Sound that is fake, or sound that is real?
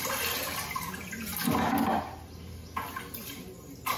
real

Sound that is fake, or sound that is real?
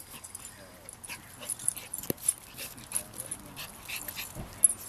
real